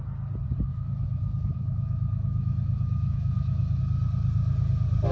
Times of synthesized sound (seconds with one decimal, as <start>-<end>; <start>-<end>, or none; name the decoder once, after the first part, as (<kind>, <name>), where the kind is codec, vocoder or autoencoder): 0.7-3.8 (autoencoder, DAC-VAE)